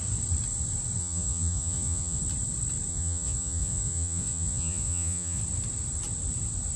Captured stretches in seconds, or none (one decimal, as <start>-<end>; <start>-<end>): 0.0-1.0; 2.2-2.9; 5.4-6.8